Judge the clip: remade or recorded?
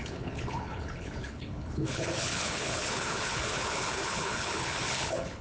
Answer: remade